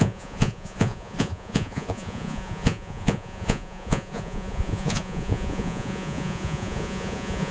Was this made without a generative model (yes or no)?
no